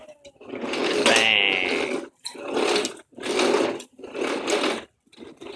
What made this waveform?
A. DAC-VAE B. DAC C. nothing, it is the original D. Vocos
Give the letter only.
C